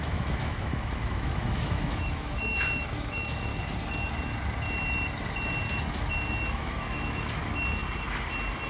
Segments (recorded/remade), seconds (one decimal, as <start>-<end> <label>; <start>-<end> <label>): 0.0-3.5 remade; 3.5-6.5 recorded; 6.5-7.8 remade; 7.8-8.7 recorded